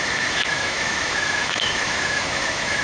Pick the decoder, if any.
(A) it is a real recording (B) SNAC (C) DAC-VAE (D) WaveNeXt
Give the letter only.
C